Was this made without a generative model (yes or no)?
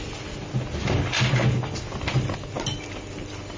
yes